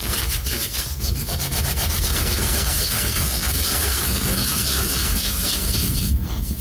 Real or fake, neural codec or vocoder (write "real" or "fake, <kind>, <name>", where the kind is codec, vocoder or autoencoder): fake, codec, SNAC